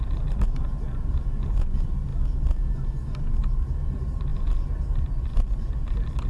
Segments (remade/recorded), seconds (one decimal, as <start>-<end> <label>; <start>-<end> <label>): 0.0-6.3 recorded